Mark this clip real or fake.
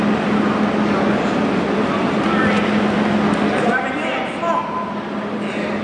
real